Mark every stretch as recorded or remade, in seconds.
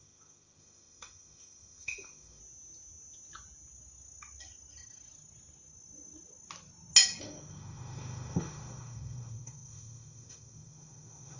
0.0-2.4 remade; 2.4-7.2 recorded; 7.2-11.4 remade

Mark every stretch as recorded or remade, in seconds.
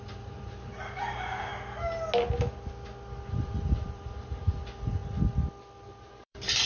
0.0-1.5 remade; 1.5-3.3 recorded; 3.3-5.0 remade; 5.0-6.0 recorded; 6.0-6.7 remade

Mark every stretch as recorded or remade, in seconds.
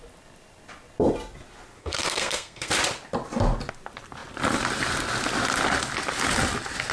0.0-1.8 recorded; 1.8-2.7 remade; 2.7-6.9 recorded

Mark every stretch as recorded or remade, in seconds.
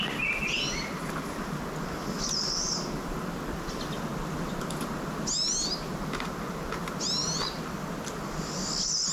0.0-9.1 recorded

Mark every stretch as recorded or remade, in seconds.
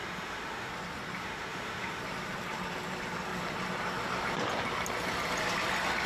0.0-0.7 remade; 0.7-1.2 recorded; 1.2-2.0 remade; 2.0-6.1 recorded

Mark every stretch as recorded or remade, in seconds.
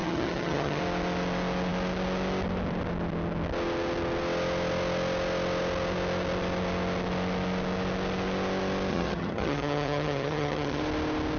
0.0-0.8 remade; 0.8-8.9 recorded; 8.9-10.8 remade; 10.8-11.4 recorded